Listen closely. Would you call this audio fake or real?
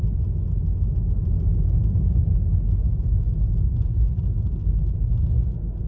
real